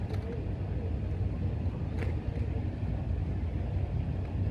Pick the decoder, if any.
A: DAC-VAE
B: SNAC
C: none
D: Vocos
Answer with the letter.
C